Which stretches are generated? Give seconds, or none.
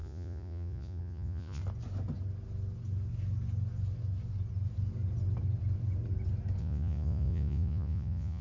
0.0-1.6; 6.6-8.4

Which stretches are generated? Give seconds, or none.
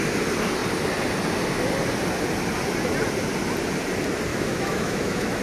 4.3-5.4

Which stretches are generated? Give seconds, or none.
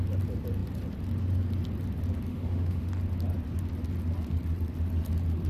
2.3-2.9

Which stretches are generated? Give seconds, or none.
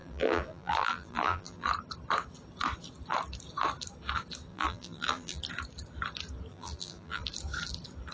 0.0-1.7; 4.5-5.4; 6.5-7.2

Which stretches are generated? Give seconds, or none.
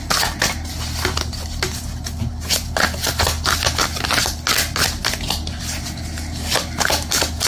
none